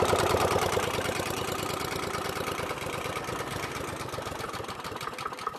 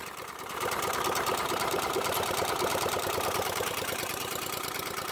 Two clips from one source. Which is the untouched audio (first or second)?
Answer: first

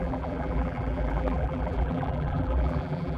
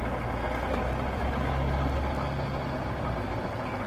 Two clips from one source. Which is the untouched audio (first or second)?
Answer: second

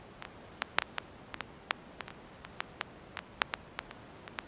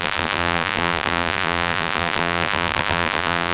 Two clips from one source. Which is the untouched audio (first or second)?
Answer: first